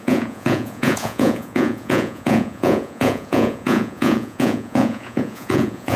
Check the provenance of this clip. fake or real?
fake